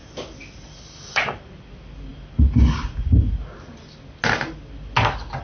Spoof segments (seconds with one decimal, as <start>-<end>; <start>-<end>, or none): none